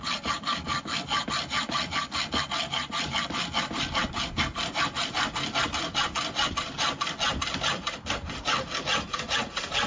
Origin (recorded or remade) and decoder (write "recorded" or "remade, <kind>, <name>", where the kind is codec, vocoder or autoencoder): recorded